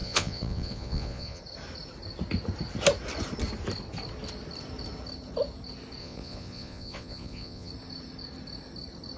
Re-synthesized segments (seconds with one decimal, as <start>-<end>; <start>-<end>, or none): 0.0-1.4; 6.0-7.7